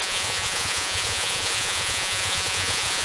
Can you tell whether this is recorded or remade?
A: remade